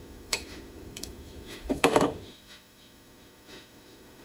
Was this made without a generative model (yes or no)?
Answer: no